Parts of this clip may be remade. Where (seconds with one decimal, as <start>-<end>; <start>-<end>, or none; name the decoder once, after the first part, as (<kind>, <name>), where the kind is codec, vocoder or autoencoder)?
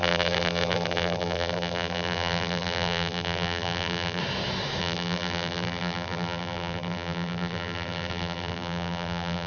0.0-4.2 (vocoder, BigVGAN v2); 4.8-9.5